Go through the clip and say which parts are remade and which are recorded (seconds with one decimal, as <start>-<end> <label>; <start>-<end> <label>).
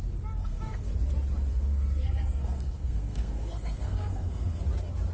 0.0-0.4 recorded; 0.4-0.9 remade; 0.9-1.5 recorded; 1.5-4.6 remade; 4.6-5.1 recorded